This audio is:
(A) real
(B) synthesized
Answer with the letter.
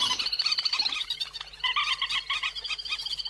A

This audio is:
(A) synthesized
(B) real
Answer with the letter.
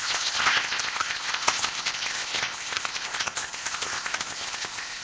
A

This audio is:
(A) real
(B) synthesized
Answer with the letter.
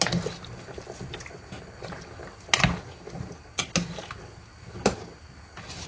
A